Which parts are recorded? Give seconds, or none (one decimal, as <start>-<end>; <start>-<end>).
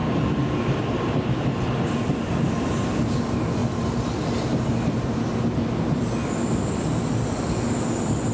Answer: 0.0-8.3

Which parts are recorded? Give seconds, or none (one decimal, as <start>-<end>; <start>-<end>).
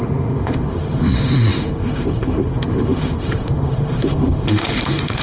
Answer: none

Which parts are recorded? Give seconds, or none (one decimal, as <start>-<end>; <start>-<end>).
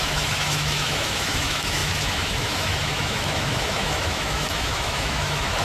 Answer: none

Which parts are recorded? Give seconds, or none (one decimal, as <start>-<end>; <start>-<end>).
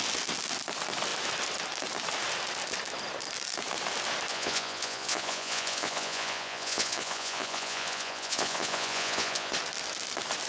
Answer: 0.0-4.3; 9.5-10.5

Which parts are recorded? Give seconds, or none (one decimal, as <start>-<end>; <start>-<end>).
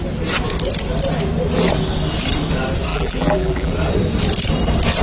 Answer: 0.0-2.9; 3.7-5.0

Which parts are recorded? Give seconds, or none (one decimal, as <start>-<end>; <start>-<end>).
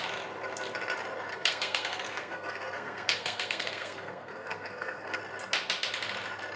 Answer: 0.0-1.3; 5.2-6.6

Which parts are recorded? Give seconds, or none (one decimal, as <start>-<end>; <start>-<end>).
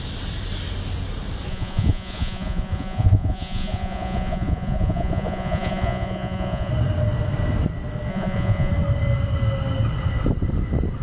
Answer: 0.0-1.5; 6.7-8.1; 8.7-11.0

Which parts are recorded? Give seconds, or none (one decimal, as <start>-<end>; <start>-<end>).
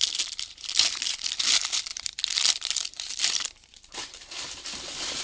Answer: 0.0-1.9